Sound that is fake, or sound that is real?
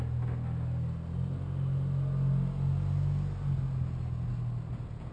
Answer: real